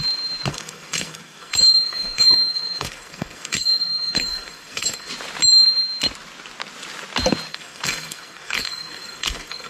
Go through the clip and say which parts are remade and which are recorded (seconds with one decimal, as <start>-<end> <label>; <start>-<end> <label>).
0.0-0.5 recorded; 0.5-5.1 remade; 5.1-7.5 recorded; 7.5-9.7 remade